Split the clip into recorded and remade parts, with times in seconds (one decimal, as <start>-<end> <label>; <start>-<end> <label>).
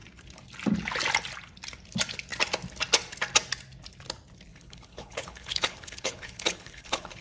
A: 0.0-4.5 recorded; 4.5-7.2 remade